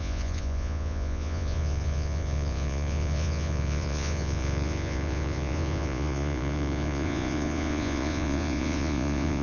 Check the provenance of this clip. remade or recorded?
remade